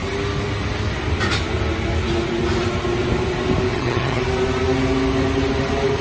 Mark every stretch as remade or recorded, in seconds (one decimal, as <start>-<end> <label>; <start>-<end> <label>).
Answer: 0.0-3.7 recorded; 3.7-4.2 remade; 4.2-6.0 recorded